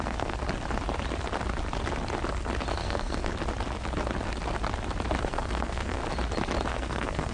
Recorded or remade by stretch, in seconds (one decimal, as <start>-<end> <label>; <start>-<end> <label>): 0.0-0.4 remade; 0.4-2.7 recorded; 2.7-3.3 remade; 3.3-5.2 recorded; 5.2-6.0 remade; 6.0-6.7 recorded; 6.7-7.3 remade